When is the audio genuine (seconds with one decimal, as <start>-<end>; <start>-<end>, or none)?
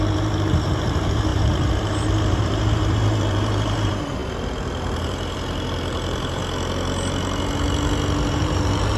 4.2-5.0; 6.4-8.3